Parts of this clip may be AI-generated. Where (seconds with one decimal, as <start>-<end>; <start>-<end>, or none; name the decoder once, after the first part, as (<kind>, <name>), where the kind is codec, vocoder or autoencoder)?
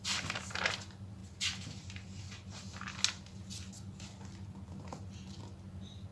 none